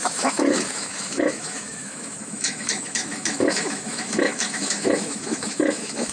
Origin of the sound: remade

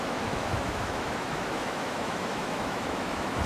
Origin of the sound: remade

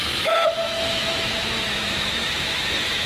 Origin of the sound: remade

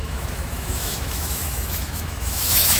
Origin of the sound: remade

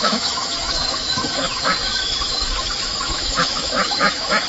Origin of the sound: remade